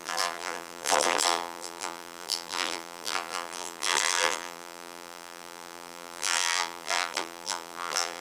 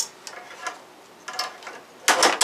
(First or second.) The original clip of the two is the second